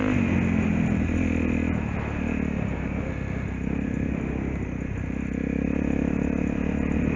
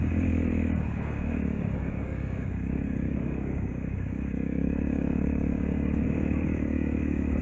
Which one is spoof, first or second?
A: second